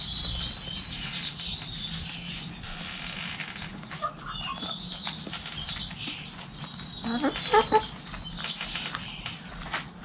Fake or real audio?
real